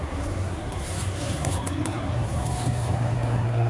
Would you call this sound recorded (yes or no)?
no